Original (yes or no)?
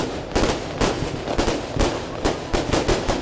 yes